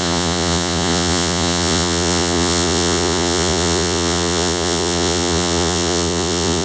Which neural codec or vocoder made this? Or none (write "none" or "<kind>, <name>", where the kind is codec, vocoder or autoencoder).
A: vocoder, Vocos